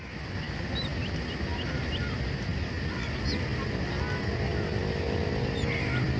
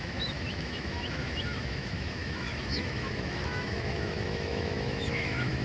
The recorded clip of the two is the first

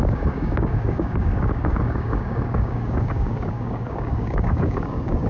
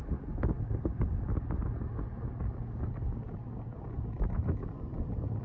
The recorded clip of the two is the second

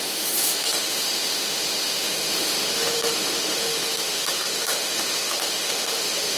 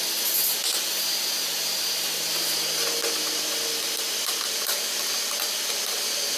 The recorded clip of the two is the second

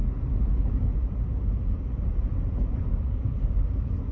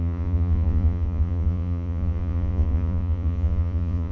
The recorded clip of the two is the first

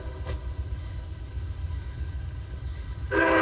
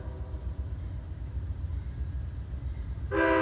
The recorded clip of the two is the second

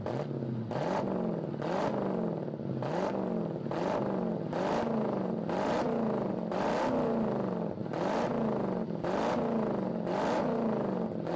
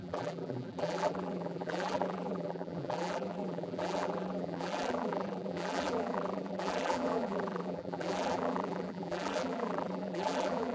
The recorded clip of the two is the first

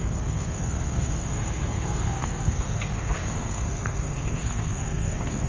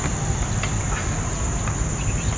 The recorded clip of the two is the second